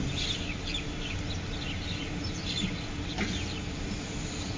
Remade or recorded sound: recorded